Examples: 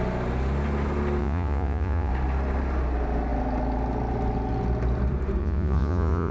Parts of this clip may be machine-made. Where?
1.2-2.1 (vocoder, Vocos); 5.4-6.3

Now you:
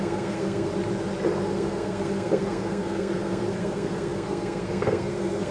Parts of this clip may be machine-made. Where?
0.0-0.7 (codec, SNAC); 1.5-5.5